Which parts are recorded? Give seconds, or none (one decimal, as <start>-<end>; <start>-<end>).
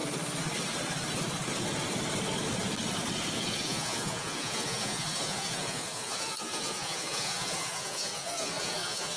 0.0-3.3